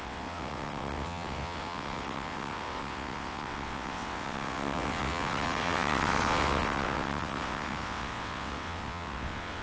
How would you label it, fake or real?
fake